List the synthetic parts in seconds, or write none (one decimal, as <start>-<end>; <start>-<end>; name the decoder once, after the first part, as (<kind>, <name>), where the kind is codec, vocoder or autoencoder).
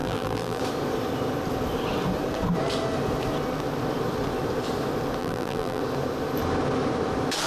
0.0-0.6 (vocoder, BigVGAN v2); 5.2-5.8